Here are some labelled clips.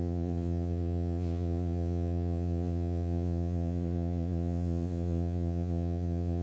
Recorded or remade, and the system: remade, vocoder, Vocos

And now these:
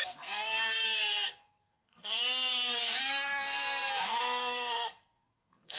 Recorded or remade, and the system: remade, codec, SNAC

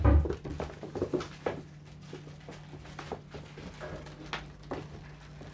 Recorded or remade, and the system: recorded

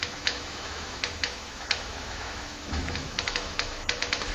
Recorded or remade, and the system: remade, autoencoder, DAC-VAE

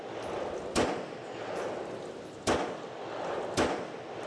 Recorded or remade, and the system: recorded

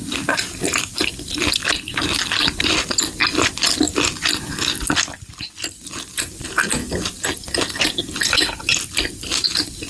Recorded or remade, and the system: recorded